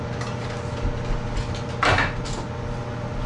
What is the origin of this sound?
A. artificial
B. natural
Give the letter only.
B